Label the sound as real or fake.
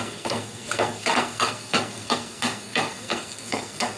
fake